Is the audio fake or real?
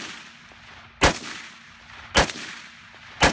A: real